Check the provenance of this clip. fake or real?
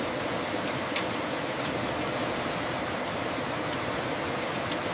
real